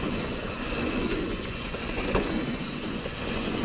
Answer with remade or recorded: remade